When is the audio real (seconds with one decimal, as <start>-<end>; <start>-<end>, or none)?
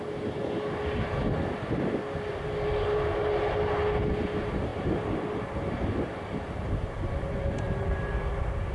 0.0-8.7